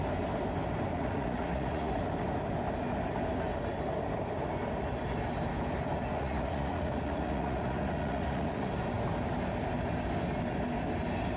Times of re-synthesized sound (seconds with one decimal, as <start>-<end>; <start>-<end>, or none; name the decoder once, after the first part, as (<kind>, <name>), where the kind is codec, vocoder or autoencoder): 0.9-1.9 (vocoder, Vocos); 6.1-8.7